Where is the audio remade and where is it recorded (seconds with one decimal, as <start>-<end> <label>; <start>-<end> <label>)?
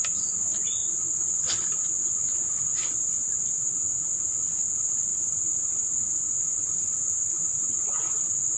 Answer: 0.0-2.8 recorded; 2.8-3.6 remade; 3.6-5.1 recorded; 5.1-7.7 remade; 7.7-8.6 recorded